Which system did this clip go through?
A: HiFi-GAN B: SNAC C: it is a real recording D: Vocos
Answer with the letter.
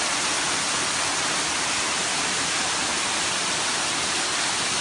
C